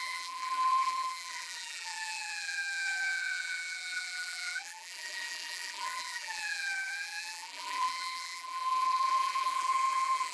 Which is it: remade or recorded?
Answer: remade